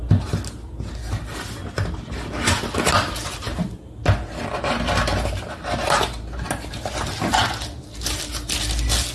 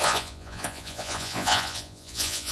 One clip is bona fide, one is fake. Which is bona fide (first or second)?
first